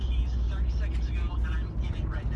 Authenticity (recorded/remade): recorded